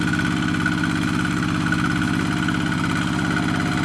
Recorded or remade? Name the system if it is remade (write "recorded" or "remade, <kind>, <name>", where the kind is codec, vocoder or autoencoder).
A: recorded